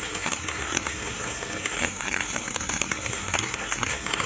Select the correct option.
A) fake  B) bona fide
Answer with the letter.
A